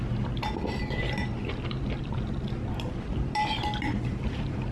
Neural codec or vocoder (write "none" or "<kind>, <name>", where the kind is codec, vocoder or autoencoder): none